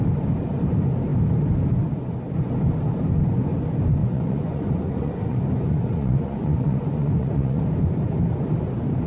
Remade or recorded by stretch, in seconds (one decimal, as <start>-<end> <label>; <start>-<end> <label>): 0.0-4.0 recorded; 4.0-7.6 remade; 7.6-9.1 recorded